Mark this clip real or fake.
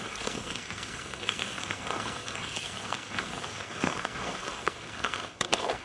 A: fake